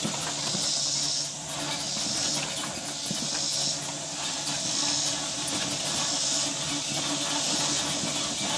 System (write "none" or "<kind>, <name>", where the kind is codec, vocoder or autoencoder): none